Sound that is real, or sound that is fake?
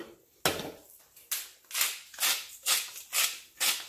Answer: real